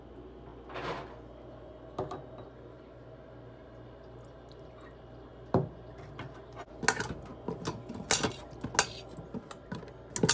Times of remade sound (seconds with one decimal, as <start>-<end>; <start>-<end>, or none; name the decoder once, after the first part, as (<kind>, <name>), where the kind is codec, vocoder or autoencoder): none